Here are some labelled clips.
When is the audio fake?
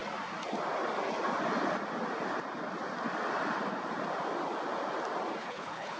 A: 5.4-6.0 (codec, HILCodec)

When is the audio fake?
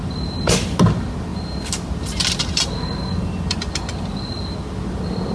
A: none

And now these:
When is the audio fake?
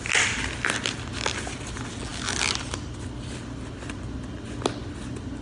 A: none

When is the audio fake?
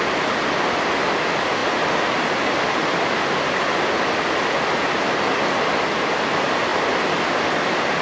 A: none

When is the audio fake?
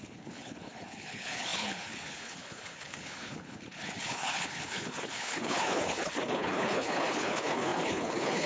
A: 0.0-8.5 (codec, HILCodec)